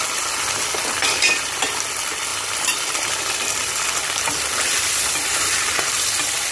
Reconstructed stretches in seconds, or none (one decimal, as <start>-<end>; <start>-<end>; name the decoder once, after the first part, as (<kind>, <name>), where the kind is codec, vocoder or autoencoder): none